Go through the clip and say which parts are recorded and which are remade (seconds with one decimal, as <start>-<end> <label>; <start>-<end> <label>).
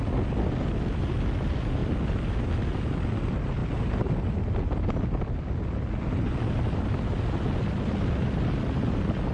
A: 0.0-9.3 recorded